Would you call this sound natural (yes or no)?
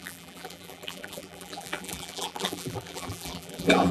no